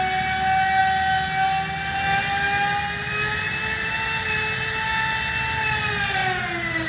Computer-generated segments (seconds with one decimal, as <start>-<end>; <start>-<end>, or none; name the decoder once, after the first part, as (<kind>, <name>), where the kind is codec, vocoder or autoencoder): none